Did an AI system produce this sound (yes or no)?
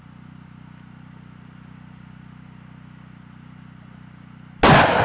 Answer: no